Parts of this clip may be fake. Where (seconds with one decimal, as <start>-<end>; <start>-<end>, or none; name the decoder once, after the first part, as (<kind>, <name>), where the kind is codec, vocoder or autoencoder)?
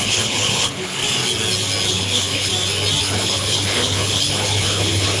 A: 0.0-1.0 (codec, HILCodec); 1.9-2.5; 3.0-5.2